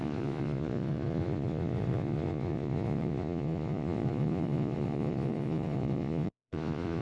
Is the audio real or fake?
fake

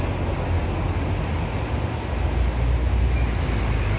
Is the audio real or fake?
real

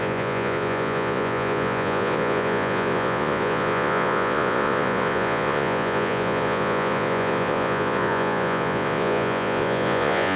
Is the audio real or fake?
fake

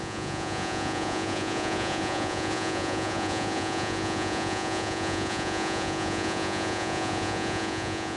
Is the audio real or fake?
fake